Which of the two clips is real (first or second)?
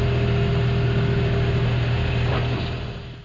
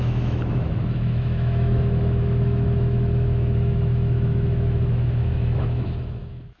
first